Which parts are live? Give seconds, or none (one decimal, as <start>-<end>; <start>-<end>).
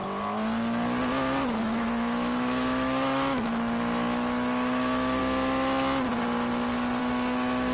0.0-1.6; 5.2-7.0